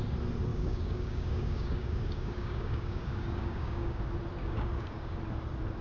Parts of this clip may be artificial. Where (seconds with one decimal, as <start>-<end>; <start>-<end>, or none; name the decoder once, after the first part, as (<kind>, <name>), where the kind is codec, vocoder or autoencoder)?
0.5-4.0 (codec, DAC); 4.4-5.2